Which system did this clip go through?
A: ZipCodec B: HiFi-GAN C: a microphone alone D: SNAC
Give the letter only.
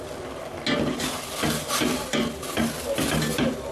C